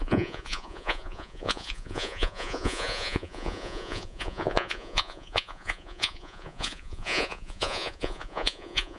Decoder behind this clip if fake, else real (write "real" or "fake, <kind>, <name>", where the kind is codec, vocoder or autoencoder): fake, vocoder, Vocos